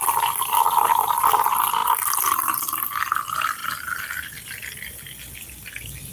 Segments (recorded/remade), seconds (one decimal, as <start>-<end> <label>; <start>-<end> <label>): 0.0-6.1 recorded